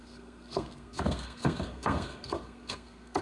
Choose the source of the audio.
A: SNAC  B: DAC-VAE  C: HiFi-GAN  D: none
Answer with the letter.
A